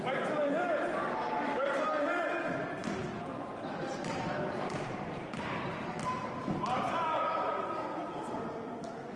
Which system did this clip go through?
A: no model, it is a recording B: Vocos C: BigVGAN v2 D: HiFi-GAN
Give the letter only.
C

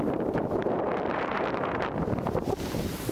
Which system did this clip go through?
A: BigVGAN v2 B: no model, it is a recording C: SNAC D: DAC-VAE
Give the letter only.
A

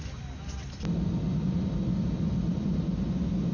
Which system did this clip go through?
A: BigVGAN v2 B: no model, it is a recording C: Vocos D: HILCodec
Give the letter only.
B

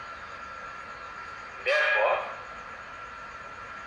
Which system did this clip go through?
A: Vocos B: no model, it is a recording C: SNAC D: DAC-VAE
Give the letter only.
B